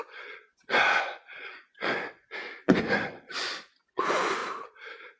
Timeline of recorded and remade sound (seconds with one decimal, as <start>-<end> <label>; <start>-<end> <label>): 0.0-4.4 remade; 4.4-5.2 recorded